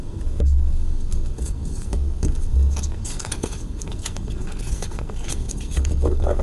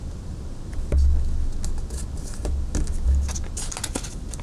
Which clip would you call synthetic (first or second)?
first